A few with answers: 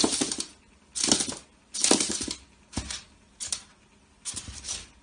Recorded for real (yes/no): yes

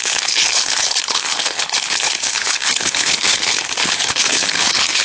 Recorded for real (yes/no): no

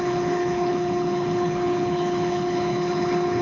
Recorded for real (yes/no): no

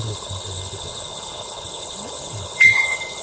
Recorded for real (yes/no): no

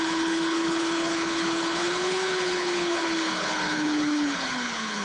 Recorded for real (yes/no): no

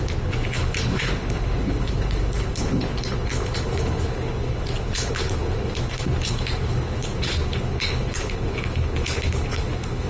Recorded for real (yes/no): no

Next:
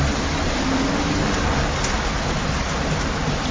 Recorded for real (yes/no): yes